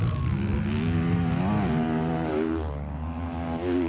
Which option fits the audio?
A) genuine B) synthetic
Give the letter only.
A